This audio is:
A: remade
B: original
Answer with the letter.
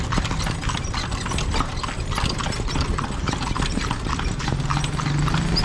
B